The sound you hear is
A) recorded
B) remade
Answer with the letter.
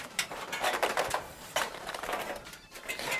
B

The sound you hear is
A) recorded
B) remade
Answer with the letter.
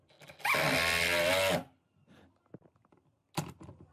A